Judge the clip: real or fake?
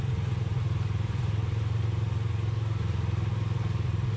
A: real